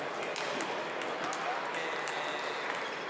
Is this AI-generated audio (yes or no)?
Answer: no